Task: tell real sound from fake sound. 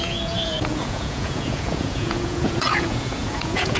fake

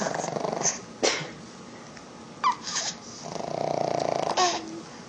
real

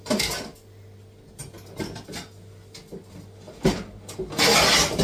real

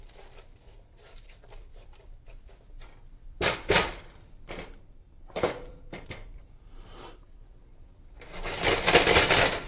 fake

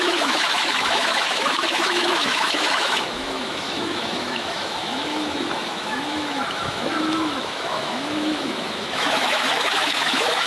fake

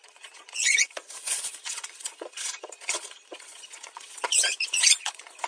fake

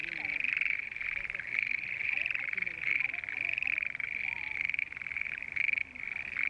real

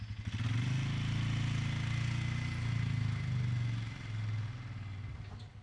real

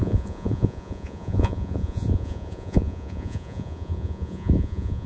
fake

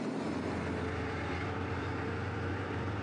fake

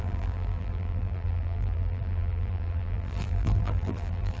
fake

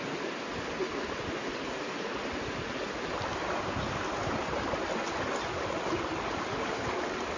real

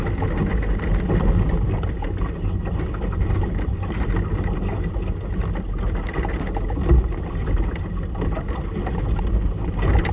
real